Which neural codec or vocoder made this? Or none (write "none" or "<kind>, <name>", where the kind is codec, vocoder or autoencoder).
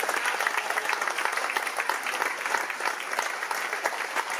none